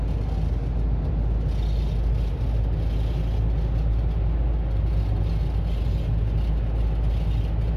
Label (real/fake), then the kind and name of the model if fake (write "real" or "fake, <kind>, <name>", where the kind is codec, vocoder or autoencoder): real